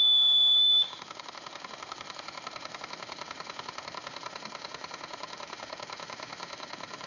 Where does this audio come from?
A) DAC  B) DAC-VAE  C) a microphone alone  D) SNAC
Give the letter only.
B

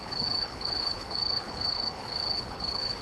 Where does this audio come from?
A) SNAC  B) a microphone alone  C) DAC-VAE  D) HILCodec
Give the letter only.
D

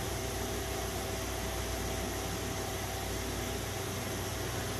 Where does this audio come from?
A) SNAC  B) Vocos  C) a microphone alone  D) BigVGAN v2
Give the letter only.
C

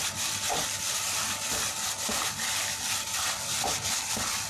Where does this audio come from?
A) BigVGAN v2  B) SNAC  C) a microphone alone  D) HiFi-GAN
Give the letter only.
C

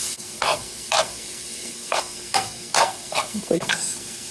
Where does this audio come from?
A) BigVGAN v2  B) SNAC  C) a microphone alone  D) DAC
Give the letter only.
B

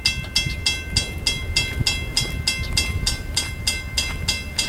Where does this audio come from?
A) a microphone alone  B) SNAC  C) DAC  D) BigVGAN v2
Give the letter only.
A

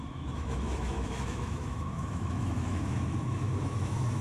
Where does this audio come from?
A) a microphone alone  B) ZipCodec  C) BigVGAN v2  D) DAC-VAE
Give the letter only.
D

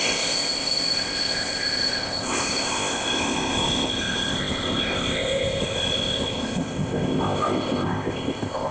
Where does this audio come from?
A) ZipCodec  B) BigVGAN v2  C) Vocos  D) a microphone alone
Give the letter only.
A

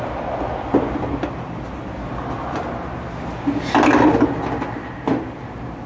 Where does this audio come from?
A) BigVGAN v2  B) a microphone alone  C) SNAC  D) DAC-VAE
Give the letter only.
B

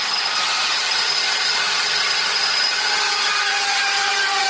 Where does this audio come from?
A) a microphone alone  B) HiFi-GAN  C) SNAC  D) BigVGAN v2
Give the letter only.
B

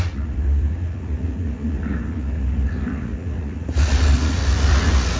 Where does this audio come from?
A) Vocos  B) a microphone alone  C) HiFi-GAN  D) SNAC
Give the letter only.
A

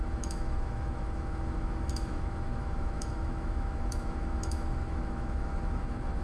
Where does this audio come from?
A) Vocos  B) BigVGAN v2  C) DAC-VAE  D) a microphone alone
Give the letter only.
C